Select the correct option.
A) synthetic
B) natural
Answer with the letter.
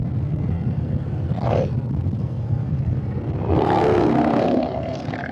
A